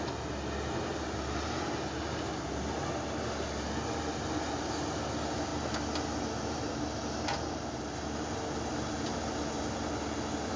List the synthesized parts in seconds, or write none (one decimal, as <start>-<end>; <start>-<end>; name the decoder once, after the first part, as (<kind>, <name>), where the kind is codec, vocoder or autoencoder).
none

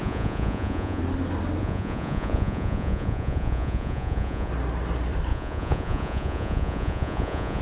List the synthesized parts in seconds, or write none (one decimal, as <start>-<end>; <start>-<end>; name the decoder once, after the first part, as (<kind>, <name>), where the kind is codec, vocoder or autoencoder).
0.0-1.0 (vocoder, Vocos); 1.6-4.5; 5.3-7.6

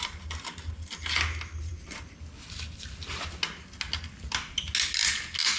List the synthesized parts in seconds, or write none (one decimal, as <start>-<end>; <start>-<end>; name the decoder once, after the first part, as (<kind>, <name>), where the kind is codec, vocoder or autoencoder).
none

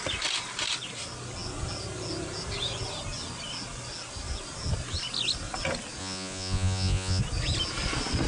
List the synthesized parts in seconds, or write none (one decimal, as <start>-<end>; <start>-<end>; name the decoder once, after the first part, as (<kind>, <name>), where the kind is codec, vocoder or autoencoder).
6.0-7.2 (vocoder, Vocos)

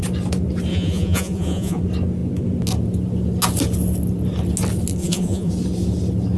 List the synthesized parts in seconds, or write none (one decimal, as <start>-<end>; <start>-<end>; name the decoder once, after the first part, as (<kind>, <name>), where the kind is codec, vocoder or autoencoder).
0.7-1.8 (vocoder, Vocos); 5.0-5.5

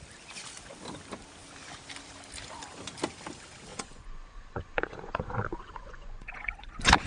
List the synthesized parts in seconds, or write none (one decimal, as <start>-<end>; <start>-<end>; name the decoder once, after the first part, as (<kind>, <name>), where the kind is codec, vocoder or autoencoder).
3.7-7.1 (vocoder, Vocos)

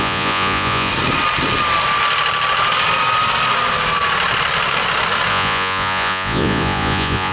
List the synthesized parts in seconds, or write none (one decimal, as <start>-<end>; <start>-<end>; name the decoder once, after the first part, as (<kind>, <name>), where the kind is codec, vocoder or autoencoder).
0.0-0.9 (vocoder, Vocos); 5.3-7.3